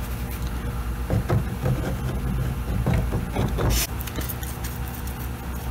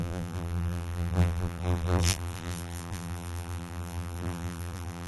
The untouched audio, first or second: first